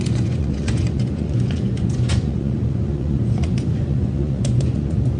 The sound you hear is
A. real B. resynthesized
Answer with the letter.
B